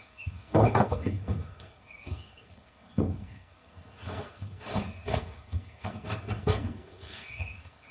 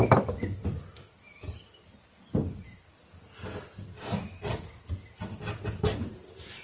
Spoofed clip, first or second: first